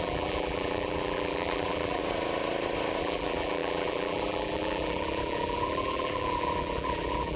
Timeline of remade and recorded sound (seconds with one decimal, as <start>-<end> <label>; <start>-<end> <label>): 0.0-2.0 remade; 2.0-3.0 recorded; 3.0-7.4 remade